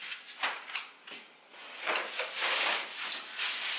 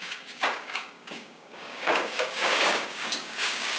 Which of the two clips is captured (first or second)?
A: first